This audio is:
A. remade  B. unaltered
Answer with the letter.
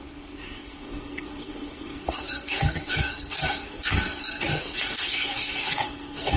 A